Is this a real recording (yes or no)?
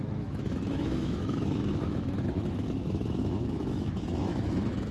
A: no